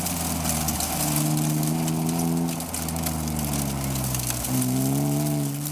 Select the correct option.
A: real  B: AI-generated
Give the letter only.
A